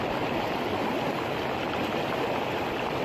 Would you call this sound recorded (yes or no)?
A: yes